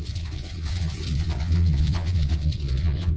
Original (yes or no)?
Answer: no